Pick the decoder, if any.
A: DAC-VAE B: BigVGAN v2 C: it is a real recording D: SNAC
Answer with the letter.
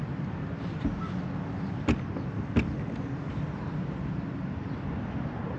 C